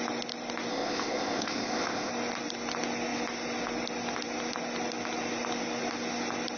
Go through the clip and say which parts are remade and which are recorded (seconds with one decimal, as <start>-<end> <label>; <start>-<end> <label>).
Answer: 0.0-0.7 recorded; 0.7-2.1 remade; 2.1-6.6 recorded